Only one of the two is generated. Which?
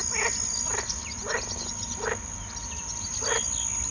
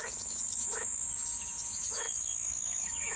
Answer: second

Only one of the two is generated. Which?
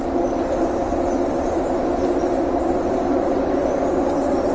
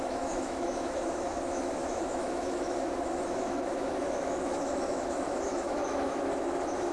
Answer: second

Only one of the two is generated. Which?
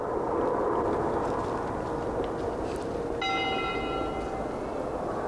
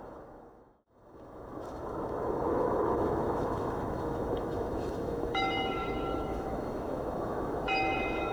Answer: second